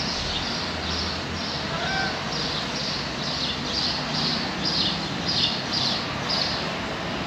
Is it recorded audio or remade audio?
recorded